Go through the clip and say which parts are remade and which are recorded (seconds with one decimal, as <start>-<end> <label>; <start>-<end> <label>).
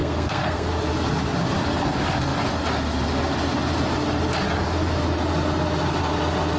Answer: 0.0-0.7 remade; 0.7-6.6 recorded